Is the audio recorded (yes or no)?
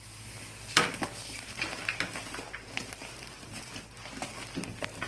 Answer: yes